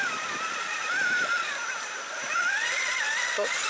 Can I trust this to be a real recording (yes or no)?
yes